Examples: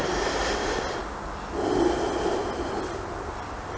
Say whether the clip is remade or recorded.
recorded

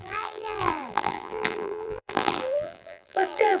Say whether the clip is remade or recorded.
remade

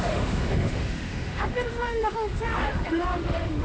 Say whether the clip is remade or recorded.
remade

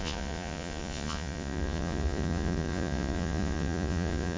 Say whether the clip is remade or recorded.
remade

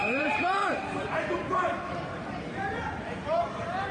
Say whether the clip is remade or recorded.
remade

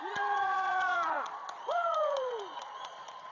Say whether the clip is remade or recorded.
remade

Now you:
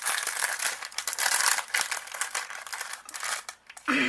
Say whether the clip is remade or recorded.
recorded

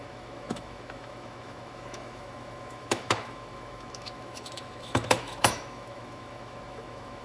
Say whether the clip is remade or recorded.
remade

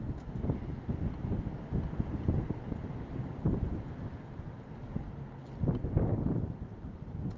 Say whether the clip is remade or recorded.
recorded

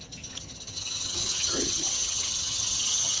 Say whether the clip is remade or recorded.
remade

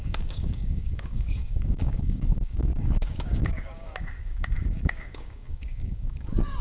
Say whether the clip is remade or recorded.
remade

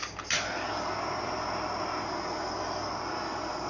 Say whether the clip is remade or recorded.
recorded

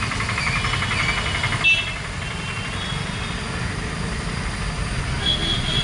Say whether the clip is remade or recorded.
recorded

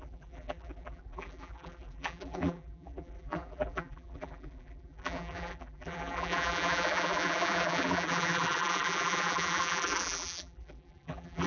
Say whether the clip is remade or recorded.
remade